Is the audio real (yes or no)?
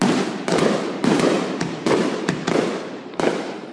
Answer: no